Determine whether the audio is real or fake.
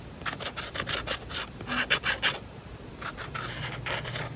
real